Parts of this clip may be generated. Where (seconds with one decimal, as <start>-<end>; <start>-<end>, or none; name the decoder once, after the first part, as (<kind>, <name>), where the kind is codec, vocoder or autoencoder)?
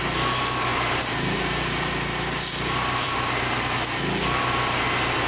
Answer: 0.7-3.2 (vocoder, BigVGAN v2)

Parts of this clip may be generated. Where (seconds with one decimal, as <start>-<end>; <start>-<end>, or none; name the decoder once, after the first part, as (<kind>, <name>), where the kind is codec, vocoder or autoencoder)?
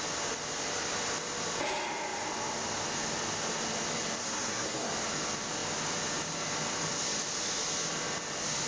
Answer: 4.2-4.9 (codec, SNAC)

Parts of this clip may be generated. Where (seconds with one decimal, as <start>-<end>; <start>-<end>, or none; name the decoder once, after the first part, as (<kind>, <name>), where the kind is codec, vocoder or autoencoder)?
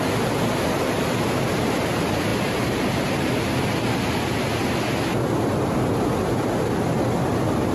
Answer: none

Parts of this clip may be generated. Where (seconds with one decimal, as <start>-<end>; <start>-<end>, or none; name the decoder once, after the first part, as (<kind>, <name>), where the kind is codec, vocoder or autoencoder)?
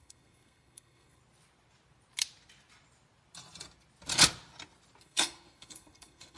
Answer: 0.0-1.2 (codec, SNAC); 5.0-6.4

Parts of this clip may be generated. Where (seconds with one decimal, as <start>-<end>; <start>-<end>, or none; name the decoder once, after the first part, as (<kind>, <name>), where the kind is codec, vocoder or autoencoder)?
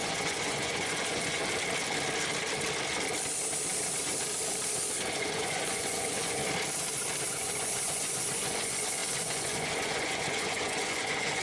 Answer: 0.0-1.4 (vocoder, Vocos); 5.1-6.4; 7.3-11.4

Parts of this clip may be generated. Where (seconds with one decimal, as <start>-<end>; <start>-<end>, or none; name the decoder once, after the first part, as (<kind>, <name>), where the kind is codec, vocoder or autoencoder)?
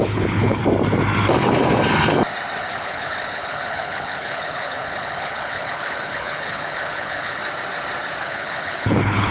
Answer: 0.0-0.6 (codec, HILCodec); 2.6-7.4; 8.2-9.3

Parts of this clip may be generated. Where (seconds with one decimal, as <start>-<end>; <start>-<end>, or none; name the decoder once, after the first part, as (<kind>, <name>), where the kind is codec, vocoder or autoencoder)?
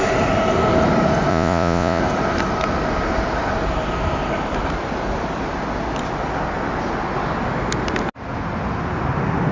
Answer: 1.3-2.0 (vocoder, Vocos)